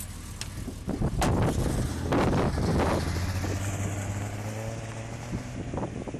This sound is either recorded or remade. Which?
recorded